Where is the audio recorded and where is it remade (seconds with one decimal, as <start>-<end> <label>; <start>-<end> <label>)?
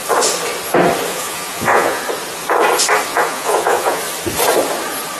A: 0.0-1.1 recorded; 1.1-2.0 remade; 2.0-3.1 recorded; 3.1-4.0 remade; 4.0-5.2 recorded